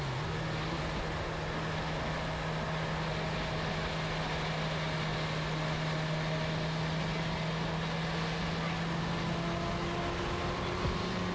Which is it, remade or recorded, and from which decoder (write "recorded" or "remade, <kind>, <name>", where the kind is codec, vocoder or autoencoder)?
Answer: recorded